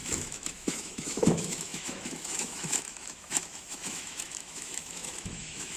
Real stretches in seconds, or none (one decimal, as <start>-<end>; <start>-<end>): none